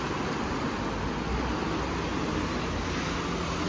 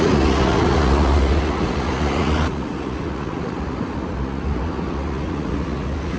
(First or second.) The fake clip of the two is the second